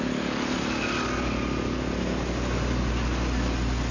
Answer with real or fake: real